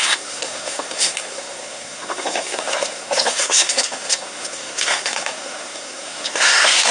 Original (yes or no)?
no